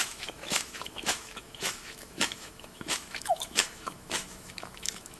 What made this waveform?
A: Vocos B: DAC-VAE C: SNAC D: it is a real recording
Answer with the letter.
B